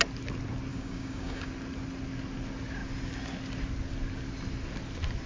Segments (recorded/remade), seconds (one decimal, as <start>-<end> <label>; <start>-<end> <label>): 0.0-0.7 recorded; 0.7-1.5 remade; 1.5-5.3 recorded